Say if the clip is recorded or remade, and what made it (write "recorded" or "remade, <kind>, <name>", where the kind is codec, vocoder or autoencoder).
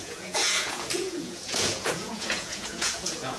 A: remade, vocoder, Vocos